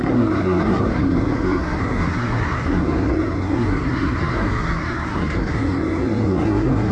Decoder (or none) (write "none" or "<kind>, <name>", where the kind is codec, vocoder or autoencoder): codec, SNAC